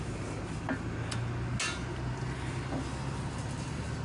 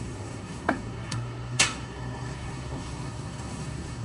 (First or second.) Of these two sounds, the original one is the first